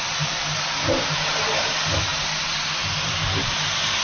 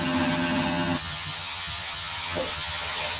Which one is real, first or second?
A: first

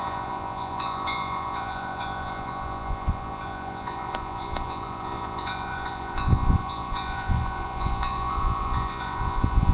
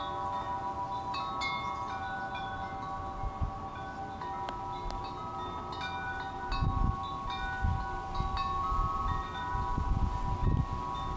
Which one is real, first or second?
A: second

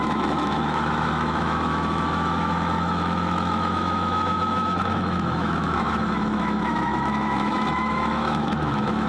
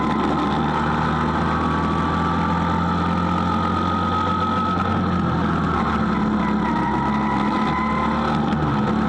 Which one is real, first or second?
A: second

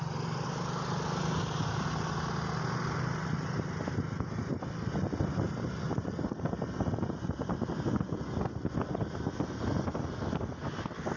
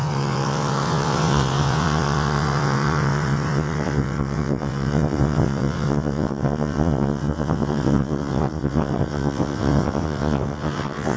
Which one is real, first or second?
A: first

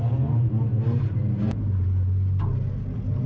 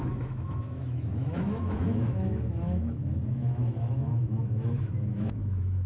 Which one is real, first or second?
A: first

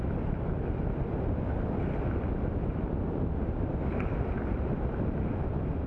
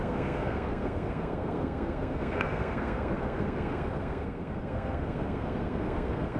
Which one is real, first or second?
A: first